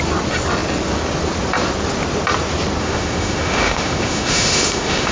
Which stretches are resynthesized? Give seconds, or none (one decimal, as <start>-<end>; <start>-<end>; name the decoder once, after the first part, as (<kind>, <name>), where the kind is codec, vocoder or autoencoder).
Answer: 2.8-5.1 (autoencoder, DAC-VAE)